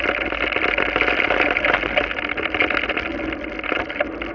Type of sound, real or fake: real